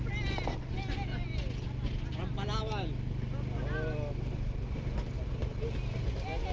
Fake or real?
real